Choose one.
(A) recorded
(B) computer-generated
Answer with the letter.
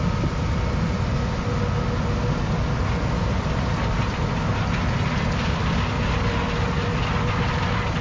A